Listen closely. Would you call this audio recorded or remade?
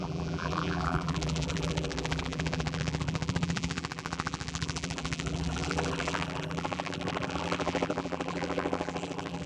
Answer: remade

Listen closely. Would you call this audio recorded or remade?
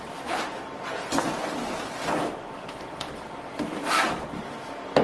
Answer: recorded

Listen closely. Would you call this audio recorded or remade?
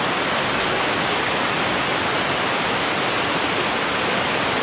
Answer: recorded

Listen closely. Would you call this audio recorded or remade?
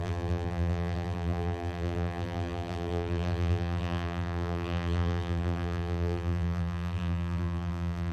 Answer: remade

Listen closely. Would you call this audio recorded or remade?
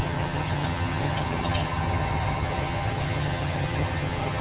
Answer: remade